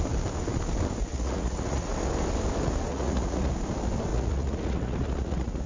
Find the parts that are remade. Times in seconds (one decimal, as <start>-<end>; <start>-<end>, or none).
1.1-1.9; 2.9-3.5; 4.1-5.7

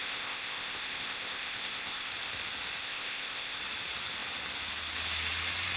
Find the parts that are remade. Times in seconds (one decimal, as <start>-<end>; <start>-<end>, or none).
0.0-2.1; 2.8-3.6

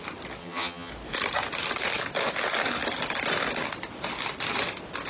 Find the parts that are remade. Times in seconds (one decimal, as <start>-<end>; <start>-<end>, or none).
0.4-0.9

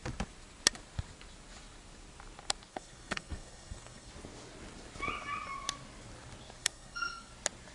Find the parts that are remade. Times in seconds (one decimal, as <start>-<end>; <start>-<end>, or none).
2.7-4.1; 6.6-7.3